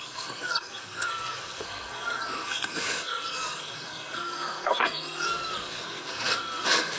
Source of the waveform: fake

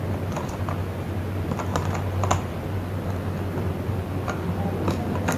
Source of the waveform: real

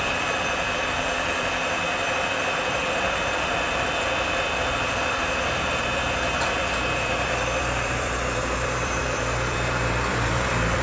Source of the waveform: fake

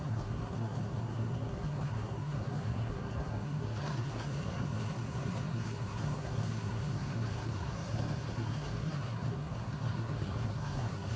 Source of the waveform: fake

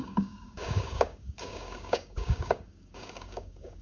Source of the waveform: fake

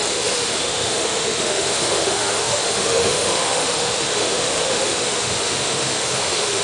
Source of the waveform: fake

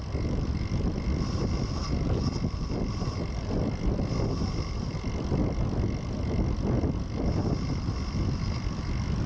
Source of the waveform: fake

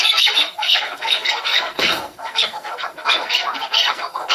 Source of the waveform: fake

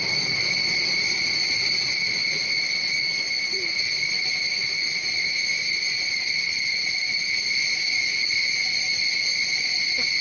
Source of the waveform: real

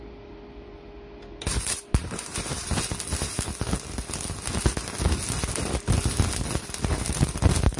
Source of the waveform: real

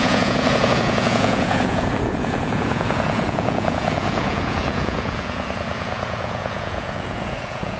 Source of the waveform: fake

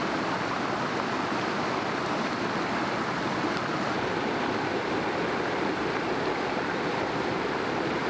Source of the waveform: fake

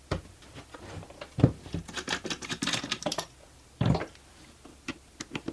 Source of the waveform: real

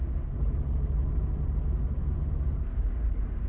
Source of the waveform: real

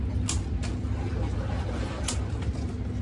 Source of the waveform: real